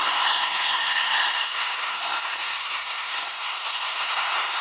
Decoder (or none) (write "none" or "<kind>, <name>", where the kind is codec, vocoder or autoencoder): codec, SNAC